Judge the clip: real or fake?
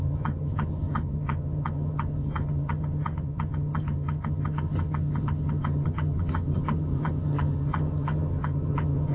fake